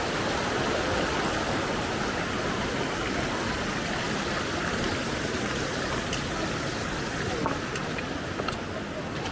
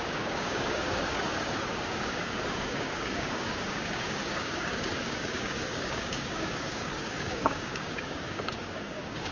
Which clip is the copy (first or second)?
second